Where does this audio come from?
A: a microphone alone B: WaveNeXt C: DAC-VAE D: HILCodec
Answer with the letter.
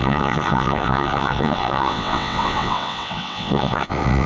B